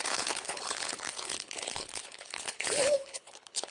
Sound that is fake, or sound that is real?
fake